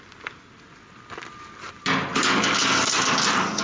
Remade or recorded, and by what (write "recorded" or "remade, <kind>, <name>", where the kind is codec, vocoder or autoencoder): recorded